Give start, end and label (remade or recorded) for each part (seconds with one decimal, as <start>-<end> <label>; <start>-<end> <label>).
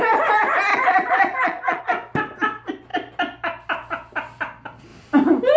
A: 0.0-0.7 recorded; 0.7-1.8 remade; 1.8-5.6 recorded